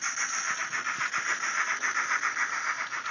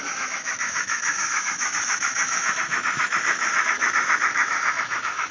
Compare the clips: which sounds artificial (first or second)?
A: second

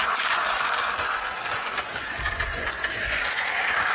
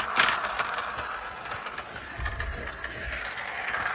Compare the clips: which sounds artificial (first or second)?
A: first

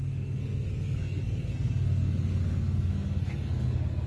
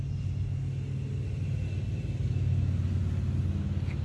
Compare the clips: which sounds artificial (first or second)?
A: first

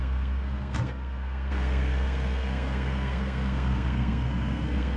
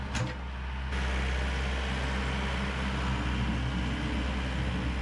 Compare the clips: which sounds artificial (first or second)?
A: first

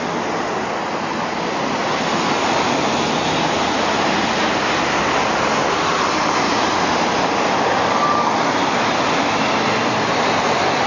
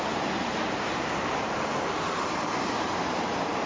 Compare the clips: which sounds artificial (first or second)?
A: second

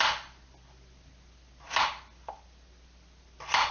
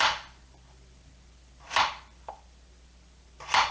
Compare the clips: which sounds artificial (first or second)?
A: second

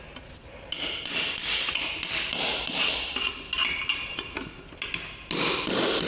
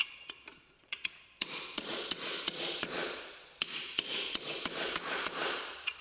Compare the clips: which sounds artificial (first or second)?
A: second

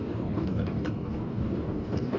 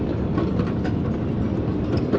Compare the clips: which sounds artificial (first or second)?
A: first